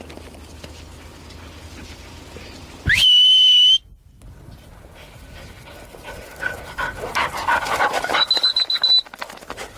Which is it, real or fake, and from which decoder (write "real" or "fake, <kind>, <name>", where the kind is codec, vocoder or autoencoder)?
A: real